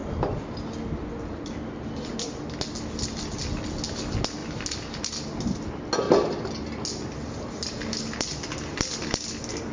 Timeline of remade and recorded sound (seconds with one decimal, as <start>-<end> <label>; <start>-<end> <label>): 0.0-9.7 recorded